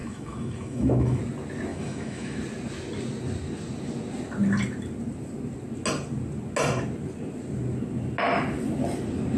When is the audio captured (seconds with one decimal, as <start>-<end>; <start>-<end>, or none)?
1.2-1.7; 2.4-9.4